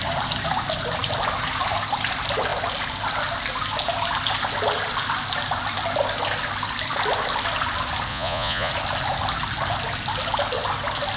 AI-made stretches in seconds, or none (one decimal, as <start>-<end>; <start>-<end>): 8.1-8.7